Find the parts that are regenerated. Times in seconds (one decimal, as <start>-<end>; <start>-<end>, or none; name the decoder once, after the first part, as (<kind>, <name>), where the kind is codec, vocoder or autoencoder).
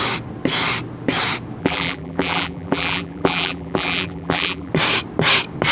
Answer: 1.6-4.7 (vocoder, BigVGAN v2)